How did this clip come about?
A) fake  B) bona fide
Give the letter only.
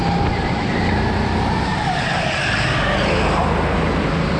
B